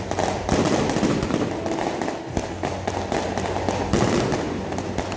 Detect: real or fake real